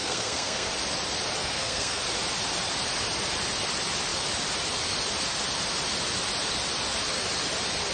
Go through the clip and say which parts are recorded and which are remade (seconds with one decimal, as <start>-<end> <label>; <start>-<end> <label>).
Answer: 0.0-0.7 remade; 0.7-1.4 recorded; 1.4-2.0 remade; 2.0-7.9 recorded